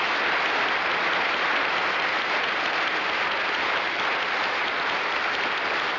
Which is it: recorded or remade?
recorded